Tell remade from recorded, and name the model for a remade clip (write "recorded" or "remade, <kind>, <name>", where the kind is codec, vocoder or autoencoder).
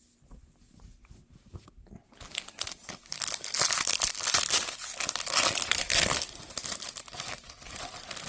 recorded